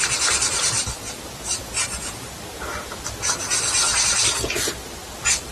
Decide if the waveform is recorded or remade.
recorded